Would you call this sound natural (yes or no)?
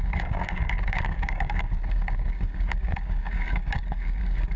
no